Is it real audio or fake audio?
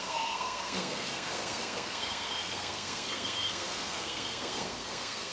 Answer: fake